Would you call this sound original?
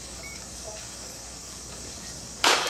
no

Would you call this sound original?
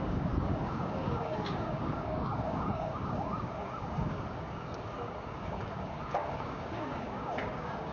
no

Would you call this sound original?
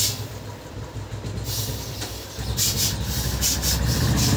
yes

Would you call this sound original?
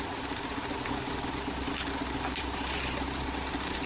yes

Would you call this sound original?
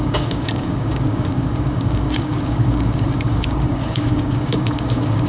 no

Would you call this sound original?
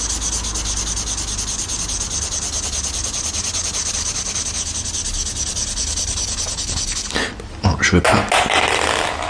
yes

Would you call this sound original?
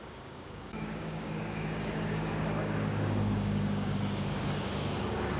no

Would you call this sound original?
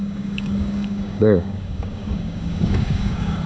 no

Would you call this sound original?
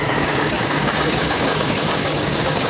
no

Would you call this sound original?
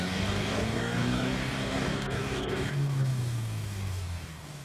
no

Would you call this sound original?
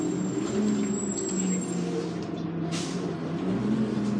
yes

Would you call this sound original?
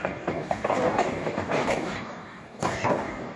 no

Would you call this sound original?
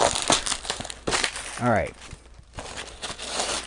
yes